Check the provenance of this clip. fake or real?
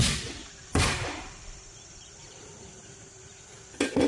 fake